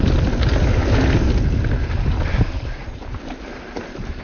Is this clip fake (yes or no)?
no